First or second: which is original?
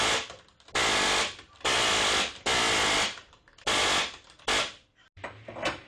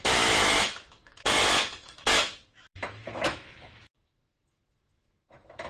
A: first